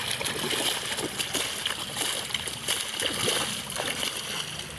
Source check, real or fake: real